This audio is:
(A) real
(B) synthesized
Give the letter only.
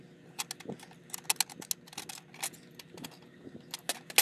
A